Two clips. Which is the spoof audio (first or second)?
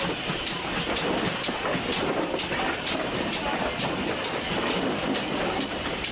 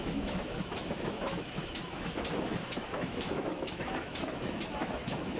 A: second